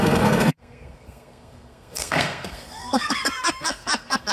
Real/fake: fake